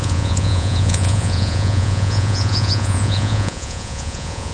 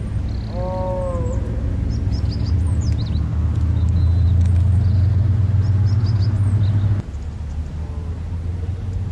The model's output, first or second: first